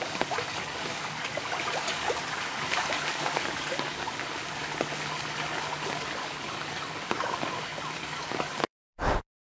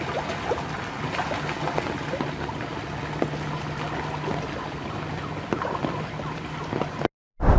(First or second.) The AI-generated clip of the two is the first